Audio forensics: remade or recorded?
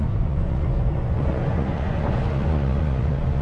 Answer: remade